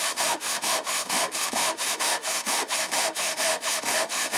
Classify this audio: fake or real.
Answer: fake